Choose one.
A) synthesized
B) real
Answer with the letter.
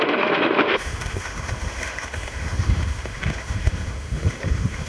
A